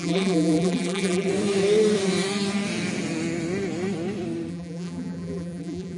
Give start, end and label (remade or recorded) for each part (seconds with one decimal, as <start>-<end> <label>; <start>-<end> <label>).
0.0-1.3 remade; 1.3-4.5 recorded; 4.5-6.0 remade